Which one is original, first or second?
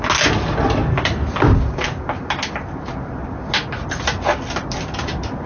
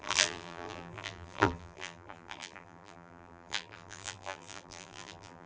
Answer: first